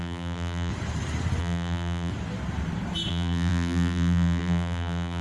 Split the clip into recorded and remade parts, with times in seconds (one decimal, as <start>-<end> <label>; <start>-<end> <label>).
0.0-0.7 remade; 0.7-1.4 recorded; 1.4-2.1 remade; 2.1-3.1 recorded; 3.1-5.2 remade